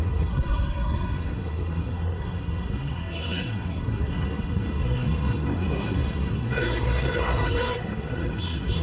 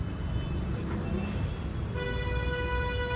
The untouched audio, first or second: second